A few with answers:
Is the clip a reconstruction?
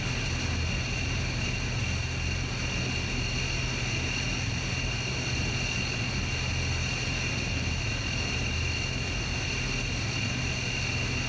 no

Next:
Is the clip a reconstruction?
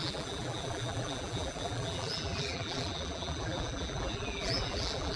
yes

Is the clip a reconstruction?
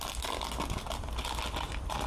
no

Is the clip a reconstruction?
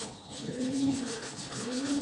yes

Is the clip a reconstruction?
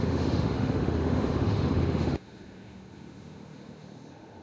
yes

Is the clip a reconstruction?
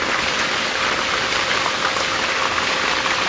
no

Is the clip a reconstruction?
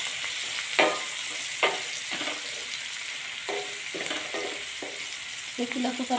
no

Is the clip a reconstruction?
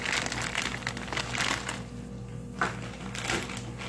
no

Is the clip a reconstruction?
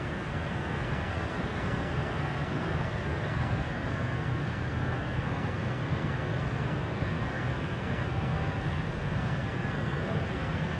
yes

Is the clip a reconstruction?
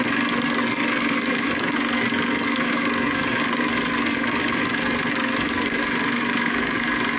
yes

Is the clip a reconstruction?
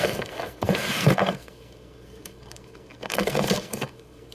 yes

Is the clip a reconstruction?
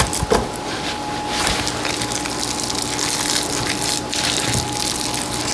no